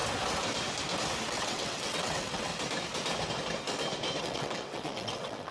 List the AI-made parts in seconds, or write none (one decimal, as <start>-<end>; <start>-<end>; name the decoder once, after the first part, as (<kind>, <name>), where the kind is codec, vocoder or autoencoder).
1.3-2.5 (vocoder, WaveNeXt); 4.2-5.5

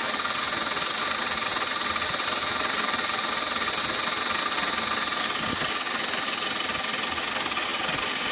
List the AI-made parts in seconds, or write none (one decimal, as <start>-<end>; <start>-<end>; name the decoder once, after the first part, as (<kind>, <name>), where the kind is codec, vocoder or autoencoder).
7.7-8.3 (vocoder, BigVGAN v2)

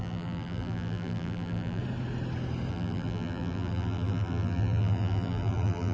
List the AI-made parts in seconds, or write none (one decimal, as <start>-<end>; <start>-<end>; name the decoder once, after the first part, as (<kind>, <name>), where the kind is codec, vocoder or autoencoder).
0.0-1.8 (vocoder, BigVGAN v2); 2.7-5.9

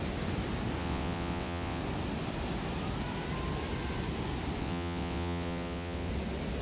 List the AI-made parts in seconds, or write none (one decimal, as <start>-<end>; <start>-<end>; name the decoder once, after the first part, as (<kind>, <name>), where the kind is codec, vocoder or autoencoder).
0.8-1.8 (vocoder, WaveNeXt); 4.6-6.1

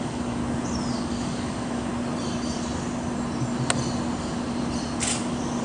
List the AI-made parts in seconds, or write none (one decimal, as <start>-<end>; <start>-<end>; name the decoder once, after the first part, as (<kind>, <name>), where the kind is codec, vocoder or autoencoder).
0.0-0.4 (codec, DAC); 0.9-1.9

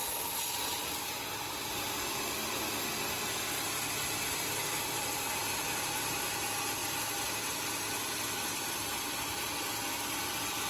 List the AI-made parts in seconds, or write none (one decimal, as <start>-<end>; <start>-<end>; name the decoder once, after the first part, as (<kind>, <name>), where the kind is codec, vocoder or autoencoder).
0.0-0.8 (vocoder, BigVGAN v2); 4.3-5.6

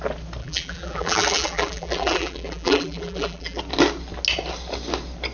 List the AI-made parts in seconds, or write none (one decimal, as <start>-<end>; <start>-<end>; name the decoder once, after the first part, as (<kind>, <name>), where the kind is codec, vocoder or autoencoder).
0.4-3.6 (vocoder, BigVGAN v2)